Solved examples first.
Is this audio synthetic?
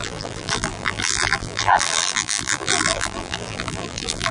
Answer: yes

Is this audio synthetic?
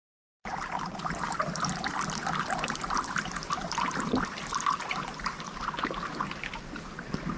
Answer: yes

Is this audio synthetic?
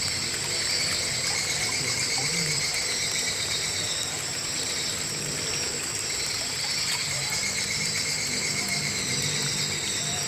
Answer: yes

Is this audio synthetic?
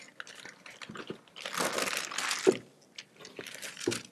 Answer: no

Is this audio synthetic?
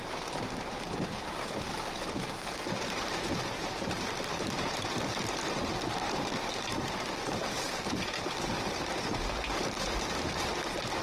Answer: yes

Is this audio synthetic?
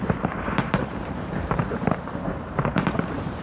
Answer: yes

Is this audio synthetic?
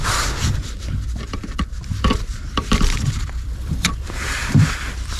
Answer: yes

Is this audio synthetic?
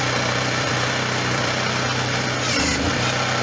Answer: yes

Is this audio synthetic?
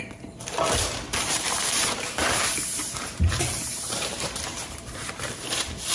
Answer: yes